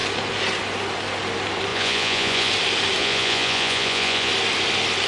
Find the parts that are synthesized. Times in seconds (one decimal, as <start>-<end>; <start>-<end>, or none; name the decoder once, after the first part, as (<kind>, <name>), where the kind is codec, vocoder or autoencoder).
1.7-2.5 (vocoder, Vocos); 3.0-4.3